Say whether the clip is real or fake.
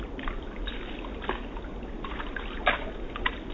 real